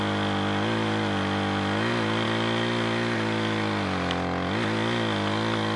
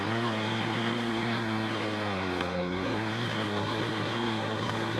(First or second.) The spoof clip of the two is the second